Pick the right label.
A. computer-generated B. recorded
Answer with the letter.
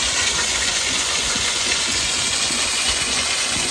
A